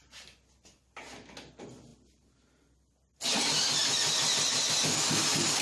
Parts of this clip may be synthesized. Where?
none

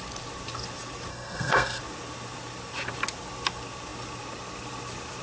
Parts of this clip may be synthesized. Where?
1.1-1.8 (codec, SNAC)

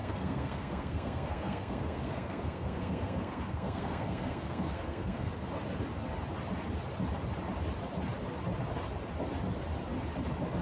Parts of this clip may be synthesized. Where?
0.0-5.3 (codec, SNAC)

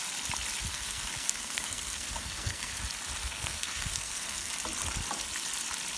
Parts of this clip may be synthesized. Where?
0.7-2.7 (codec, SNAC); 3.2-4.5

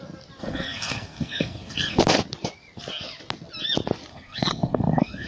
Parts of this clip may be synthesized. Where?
0.4-2.0 (codec, SNAC); 4.1-5.3